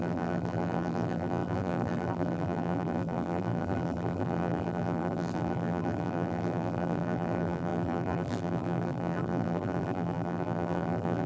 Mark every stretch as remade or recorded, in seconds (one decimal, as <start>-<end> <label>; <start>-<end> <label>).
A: 0.0-11.3 remade